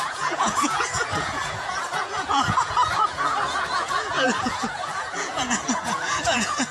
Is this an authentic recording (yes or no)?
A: no